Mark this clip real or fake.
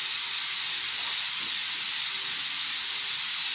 real